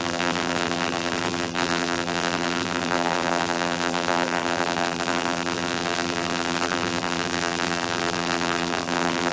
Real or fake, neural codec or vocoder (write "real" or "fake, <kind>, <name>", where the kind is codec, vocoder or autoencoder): fake, vocoder, BigVGAN v2